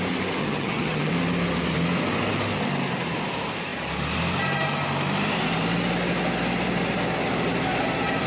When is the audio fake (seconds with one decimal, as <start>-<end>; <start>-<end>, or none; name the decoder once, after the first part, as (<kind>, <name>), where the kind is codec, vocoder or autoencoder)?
0.4-1.1 (vocoder, HiFi-GAN)